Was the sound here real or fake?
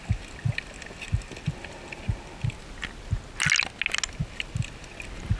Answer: real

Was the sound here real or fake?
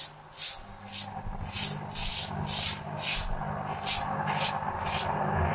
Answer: real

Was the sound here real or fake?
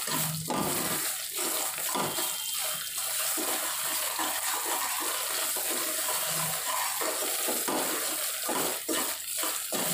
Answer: real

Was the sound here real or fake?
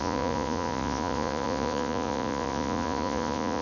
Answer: fake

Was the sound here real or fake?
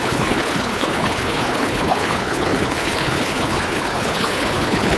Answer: fake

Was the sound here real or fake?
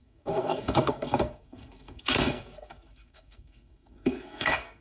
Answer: fake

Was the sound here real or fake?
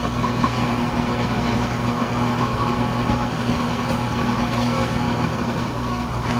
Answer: fake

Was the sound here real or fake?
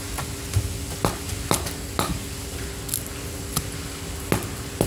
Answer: real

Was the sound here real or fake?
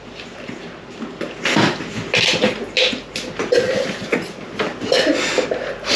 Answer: real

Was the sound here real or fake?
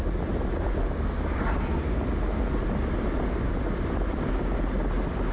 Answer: real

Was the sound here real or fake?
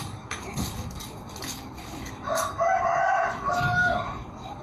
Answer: fake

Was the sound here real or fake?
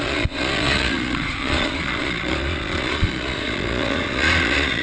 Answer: fake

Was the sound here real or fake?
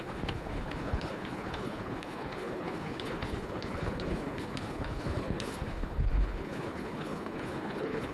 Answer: fake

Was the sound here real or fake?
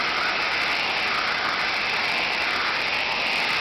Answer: real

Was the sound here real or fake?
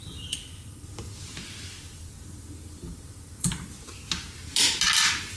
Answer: real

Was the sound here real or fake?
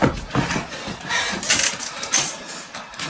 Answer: real